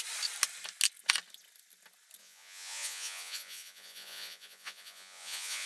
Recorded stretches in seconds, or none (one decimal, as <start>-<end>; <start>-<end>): 0.0-2.2